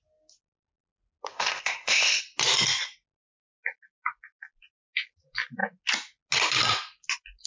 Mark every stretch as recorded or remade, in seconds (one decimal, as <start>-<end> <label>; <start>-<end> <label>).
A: 0.0-1.3 recorded; 1.3-2.2 remade; 2.2-7.5 recorded